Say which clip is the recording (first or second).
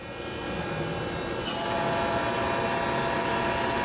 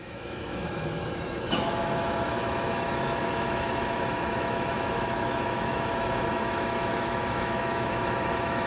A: first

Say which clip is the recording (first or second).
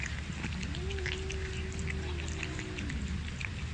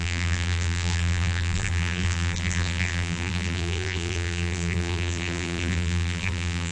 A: first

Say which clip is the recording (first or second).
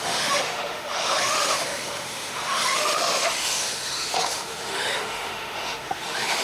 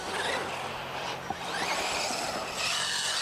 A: second